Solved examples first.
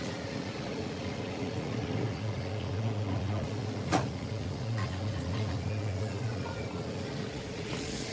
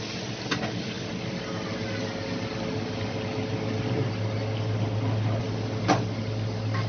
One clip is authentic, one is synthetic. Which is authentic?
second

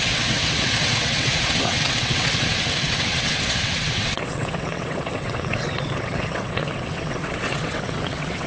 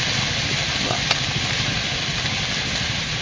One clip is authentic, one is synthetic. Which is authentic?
second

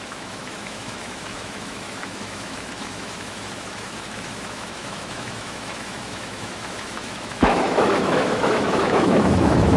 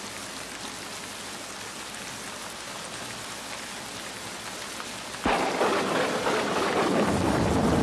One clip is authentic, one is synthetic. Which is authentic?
second